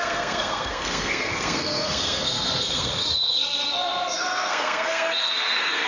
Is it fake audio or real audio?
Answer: fake